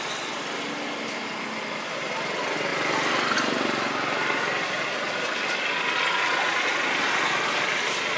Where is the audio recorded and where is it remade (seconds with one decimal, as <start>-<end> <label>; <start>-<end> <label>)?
0.0-8.2 recorded